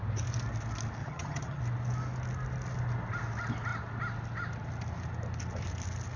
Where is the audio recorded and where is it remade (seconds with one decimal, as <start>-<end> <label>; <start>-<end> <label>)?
0.0-1.0 recorded; 1.0-1.6 remade; 1.6-6.2 recorded